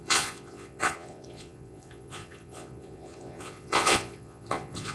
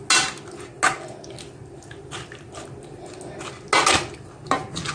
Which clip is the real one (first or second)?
second